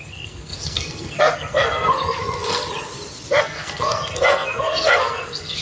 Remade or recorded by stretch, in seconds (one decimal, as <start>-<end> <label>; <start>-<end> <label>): 0.0-2.6 remade; 2.6-3.4 recorded; 3.4-5.6 remade